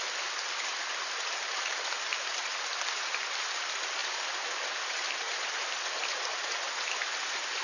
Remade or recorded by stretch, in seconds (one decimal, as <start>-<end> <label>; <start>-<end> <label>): 0.0-7.6 recorded